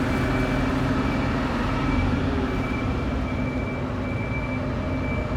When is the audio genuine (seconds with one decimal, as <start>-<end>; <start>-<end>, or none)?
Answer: 0.0-0.7; 3.4-5.4